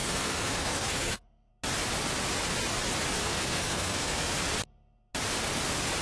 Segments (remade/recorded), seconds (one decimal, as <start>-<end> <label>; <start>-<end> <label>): 0.0-1.5 remade; 1.5-3.2 recorded; 3.2-4.3 remade; 4.3-6.0 recorded